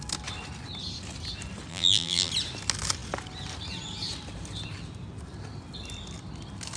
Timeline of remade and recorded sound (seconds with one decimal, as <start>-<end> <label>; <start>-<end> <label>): 0.0-1.7 recorded; 1.7-2.3 remade; 2.3-6.8 recorded